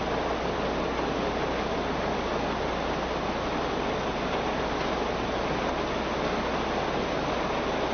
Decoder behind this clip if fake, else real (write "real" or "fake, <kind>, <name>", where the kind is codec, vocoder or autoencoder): real